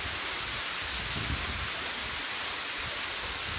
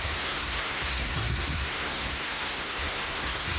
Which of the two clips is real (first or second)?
first